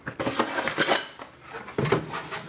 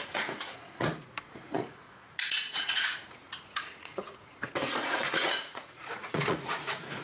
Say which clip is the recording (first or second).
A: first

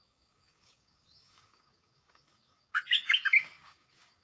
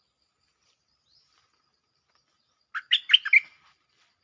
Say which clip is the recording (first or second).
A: second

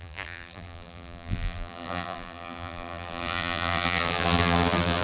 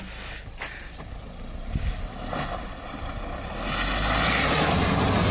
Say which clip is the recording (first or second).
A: second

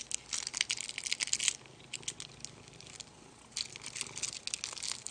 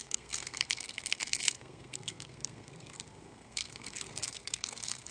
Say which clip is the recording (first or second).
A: first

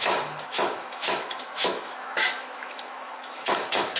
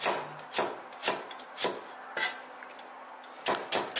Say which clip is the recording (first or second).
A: second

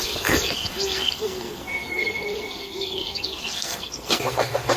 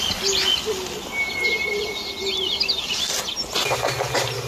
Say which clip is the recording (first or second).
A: second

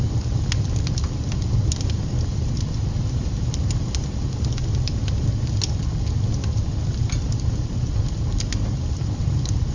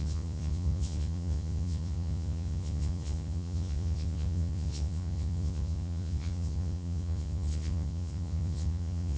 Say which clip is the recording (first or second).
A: first